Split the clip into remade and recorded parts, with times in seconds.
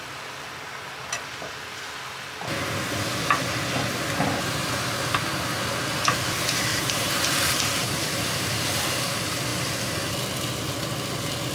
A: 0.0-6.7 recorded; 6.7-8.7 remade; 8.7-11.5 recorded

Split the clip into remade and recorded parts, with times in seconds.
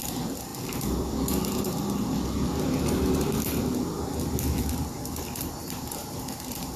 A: 0.0-5.6 recorded; 5.6-6.8 remade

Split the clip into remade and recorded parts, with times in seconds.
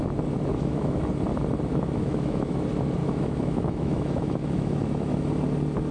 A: 0.0-0.5 recorded; 0.5-1.1 remade; 1.1-1.7 recorded; 1.7-2.6 remade; 2.6-3.0 recorded; 3.0-5.3 remade; 5.3-5.9 recorded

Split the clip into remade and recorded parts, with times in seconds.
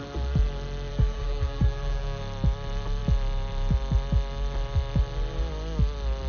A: 0.0-0.9 recorded; 0.9-2.2 remade; 2.2-6.3 recorded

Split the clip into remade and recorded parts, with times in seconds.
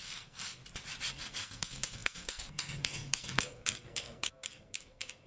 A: 0.0-0.6 remade; 0.6-1.1 recorded; 1.1-5.3 remade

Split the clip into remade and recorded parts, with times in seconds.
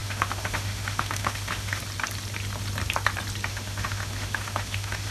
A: 0.0-1.8 remade; 1.8-3.5 recorded; 3.5-5.1 remade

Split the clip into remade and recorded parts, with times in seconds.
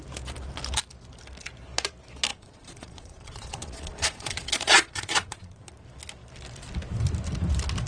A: 0.0-2.3 recorded; 2.3-5.7 remade; 5.7-7.9 recorded